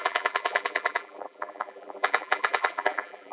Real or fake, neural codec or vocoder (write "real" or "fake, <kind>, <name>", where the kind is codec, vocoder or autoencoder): fake, vocoder, BigVGAN v2